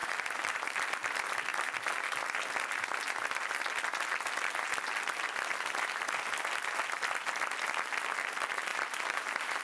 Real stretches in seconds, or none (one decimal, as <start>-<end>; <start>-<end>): 0.6-8.7